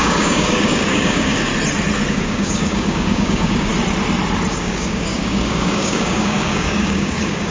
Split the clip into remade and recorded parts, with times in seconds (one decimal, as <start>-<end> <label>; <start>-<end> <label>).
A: 0.0-1.5 remade; 1.5-2.1 recorded; 2.1-3.7 remade; 3.7-4.5 recorded; 4.5-7.5 remade